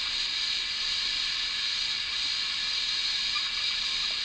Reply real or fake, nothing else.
real